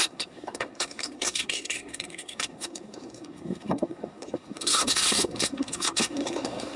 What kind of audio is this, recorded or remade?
remade